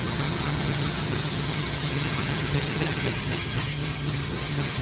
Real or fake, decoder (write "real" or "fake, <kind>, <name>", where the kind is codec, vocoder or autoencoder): fake, vocoder, HiFi-GAN